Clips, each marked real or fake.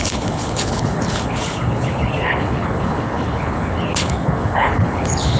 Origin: fake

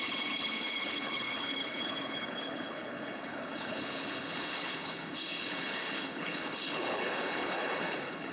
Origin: fake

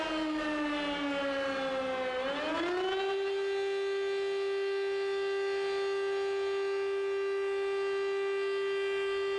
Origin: real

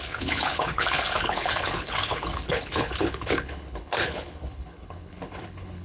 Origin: fake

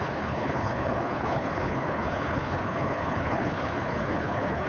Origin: fake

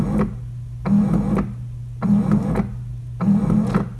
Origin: real